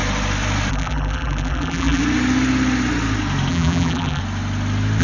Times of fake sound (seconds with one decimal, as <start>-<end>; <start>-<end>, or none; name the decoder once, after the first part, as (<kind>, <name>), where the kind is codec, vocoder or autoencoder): 0.7-2.0 (vocoder, BigVGAN v2); 3.5-4.2